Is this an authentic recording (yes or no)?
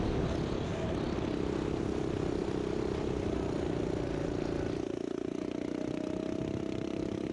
yes